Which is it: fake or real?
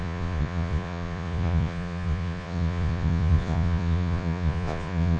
fake